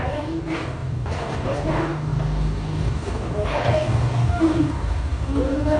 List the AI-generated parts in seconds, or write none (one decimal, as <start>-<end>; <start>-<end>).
0.0-5.8